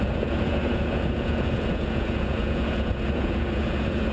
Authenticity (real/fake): fake